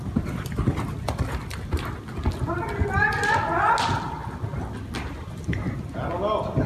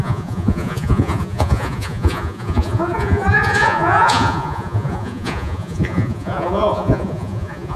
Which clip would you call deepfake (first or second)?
second